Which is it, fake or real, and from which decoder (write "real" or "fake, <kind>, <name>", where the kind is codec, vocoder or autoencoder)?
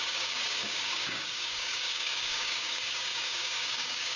fake, codec, DAC